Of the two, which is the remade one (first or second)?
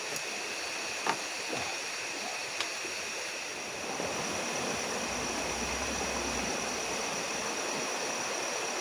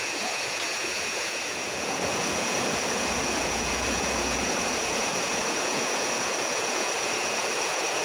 second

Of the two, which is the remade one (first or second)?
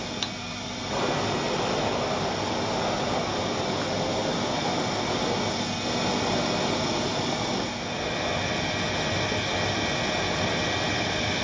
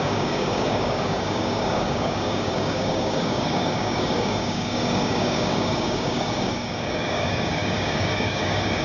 second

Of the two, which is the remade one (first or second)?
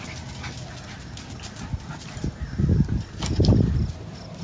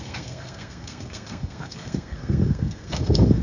second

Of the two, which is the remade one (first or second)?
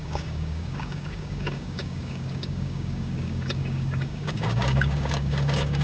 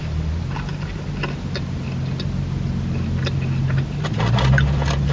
first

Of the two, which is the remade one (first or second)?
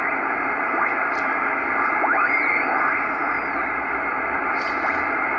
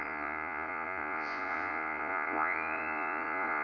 second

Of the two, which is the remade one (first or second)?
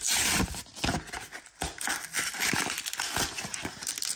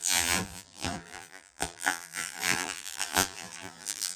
second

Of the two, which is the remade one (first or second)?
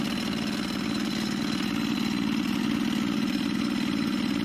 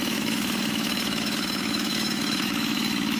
second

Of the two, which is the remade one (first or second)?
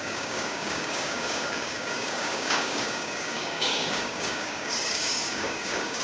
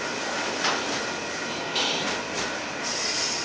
first